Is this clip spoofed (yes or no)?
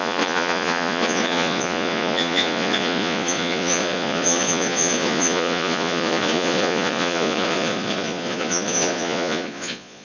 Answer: yes